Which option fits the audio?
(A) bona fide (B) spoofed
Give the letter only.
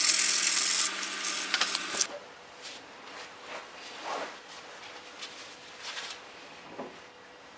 A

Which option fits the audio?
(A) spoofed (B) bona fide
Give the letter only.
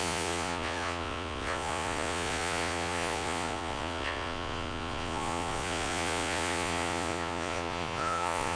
A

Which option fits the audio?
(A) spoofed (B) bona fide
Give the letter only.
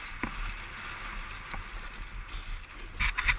B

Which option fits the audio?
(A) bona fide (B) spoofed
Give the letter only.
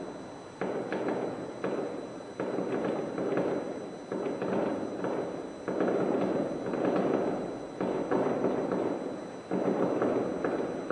A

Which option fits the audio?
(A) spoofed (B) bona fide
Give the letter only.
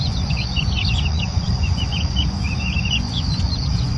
A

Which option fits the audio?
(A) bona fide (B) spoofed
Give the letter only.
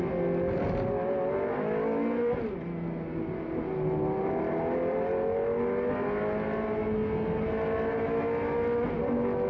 A